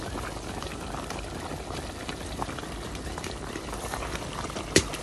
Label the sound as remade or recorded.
remade